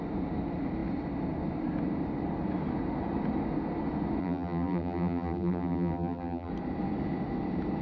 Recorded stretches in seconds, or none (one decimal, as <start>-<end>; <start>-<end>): 0.0-4.2; 6.5-7.8